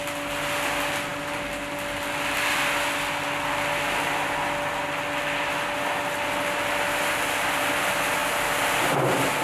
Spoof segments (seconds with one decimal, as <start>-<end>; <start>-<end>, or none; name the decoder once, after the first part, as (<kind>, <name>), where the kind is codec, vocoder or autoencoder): none